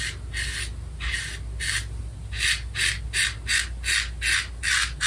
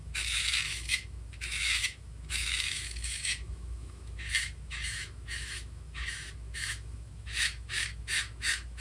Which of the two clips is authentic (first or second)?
first